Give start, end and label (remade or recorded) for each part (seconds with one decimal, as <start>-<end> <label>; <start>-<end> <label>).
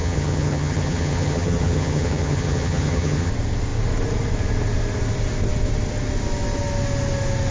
0.0-3.3 remade; 3.3-7.5 recorded